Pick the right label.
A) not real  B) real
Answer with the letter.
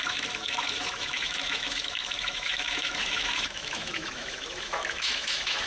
A